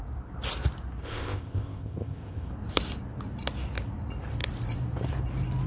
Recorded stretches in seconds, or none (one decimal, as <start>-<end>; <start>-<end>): 0.0-1.0; 2.5-5.7